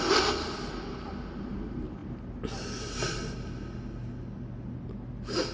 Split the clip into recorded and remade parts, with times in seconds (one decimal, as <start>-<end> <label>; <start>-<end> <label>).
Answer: 0.0-5.5 recorded